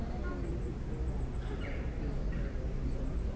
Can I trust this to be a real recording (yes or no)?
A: yes